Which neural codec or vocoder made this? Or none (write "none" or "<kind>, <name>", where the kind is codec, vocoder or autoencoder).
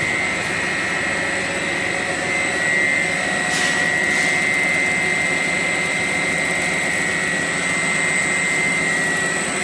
none